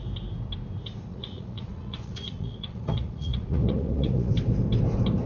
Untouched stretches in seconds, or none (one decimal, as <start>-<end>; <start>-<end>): 0.0-1.1; 4.3-5.3